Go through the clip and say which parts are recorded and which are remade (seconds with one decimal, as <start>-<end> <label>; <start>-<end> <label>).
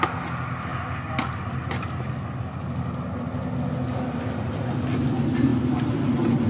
0.0-6.5 recorded